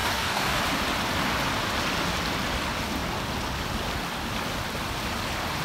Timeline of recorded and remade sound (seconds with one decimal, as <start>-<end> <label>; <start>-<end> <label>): 0.0-0.6 remade; 0.6-5.6 recorded